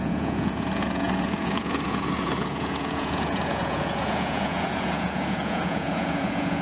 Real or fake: fake